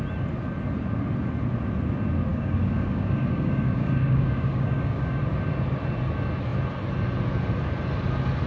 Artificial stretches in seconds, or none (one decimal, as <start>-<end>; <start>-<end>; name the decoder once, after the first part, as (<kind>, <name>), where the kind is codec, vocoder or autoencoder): 2.3-5.2 (codec, DAC)